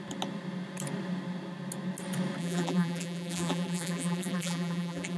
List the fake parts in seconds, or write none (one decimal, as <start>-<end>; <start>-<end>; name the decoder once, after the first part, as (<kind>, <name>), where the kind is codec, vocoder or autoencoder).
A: 2.4-5.2 (vocoder, BigVGAN v2)